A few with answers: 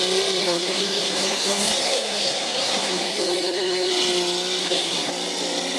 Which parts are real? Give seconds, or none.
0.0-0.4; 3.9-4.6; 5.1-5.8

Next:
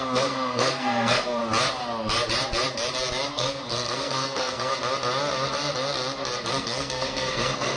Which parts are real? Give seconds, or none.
1.4-3.3; 4.7-6.5

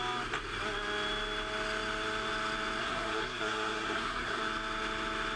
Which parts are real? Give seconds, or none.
0.0-2.8; 4.4-5.4

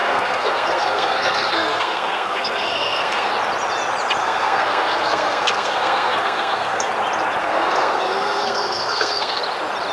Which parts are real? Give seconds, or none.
3.3-4.2; 6.9-7.4; 9.4-9.9